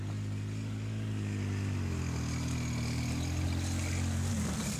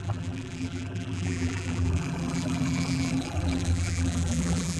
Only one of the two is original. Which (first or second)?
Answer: first